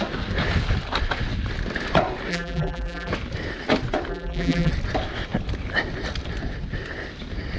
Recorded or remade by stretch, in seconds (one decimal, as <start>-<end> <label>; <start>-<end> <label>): 0.0-2.3 recorded; 2.3-3.1 remade; 3.1-4.1 recorded; 4.1-4.7 remade; 4.7-7.6 recorded